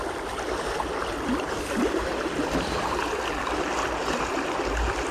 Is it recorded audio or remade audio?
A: recorded